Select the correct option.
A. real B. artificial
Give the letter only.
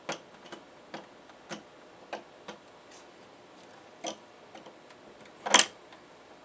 A